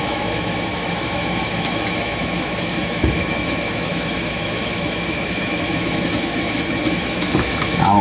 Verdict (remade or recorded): remade